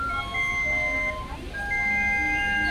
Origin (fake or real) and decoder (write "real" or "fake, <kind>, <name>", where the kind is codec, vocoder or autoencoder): real